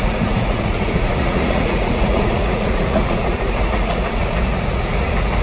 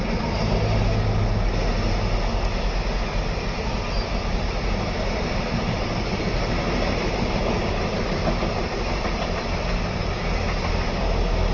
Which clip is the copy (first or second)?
first